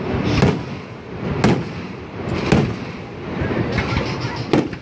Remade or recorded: recorded